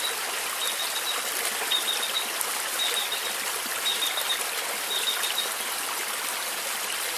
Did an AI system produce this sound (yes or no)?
no